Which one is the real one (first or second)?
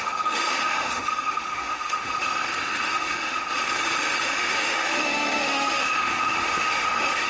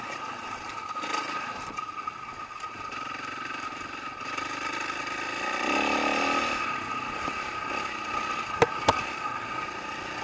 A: second